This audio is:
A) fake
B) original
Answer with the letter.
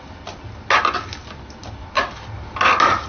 B